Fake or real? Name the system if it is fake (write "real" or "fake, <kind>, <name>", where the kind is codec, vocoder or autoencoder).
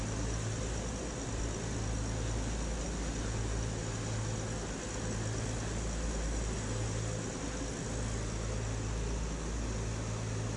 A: real